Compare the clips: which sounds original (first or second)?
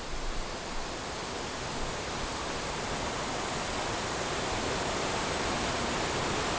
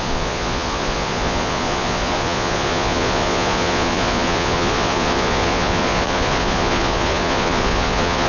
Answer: first